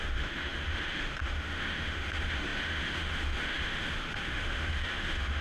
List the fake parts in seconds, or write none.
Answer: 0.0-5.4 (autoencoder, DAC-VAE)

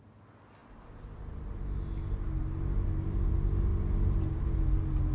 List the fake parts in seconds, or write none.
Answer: none

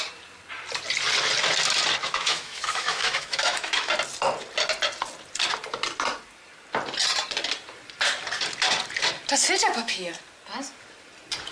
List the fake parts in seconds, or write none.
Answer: 2.0-3.9 (autoencoder, DAC-VAE); 9.6-10.1

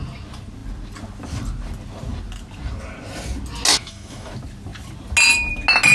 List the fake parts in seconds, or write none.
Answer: 3.7-4.3 (autoencoder, DAC-VAE)

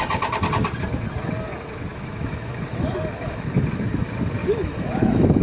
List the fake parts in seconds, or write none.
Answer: 1.9-3.5 (autoencoder, DAC-VAE); 4.4-5.4

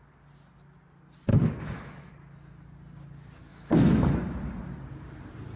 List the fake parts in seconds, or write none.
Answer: 1.3-2.1 (autoencoder, DAC-VAE); 3.5-4.1

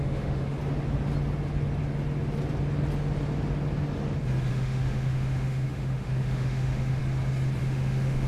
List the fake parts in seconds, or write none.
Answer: 0.0-0.6 (autoencoder, DAC-VAE); 4.5-7.0; 7.6-8.3

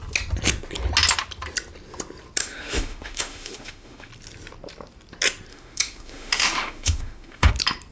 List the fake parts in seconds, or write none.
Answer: 2.4-4.1 (autoencoder, DAC-VAE); 5.5-7.5